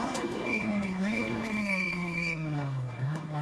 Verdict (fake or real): fake